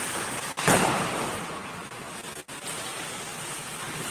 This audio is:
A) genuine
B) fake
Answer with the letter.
A